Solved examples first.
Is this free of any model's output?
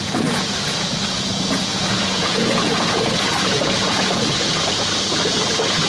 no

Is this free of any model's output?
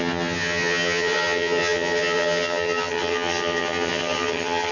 no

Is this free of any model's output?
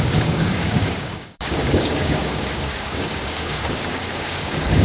no